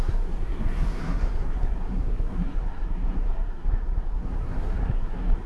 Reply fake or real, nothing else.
fake